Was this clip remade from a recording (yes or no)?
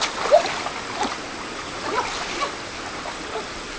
no